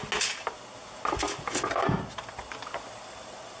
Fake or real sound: real